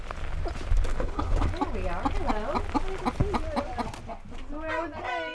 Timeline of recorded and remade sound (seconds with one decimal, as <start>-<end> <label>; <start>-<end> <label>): 0.0-0.9 recorded; 0.9-1.5 remade; 1.5-5.3 recorded